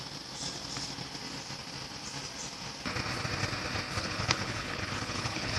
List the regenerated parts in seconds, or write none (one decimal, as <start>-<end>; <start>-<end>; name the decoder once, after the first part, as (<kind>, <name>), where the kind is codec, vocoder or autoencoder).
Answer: 4.0-5.6 (codec, HILCodec)